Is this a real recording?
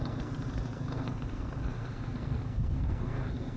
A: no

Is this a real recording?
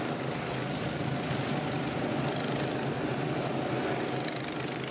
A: no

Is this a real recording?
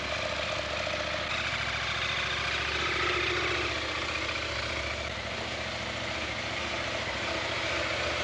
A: yes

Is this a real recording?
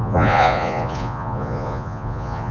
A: no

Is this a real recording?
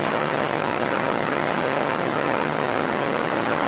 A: no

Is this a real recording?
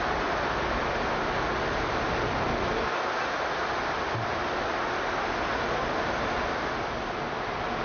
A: yes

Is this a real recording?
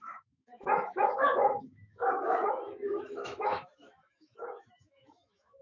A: no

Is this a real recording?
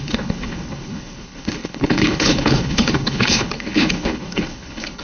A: no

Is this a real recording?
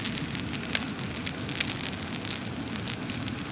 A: yes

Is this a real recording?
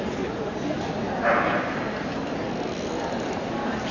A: yes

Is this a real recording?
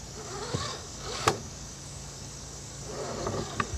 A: no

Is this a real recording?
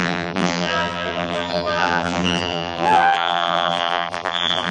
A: no